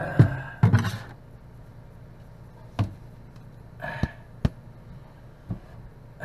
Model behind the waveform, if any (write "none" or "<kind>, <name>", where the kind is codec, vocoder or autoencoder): none